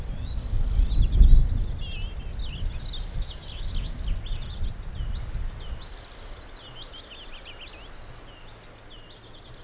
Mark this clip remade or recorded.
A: recorded